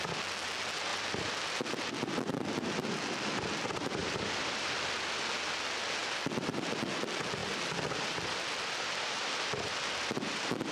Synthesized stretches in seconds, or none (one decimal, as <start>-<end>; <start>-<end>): 0.9-1.9; 4.0-4.8; 6.0-6.8; 7.4-10.7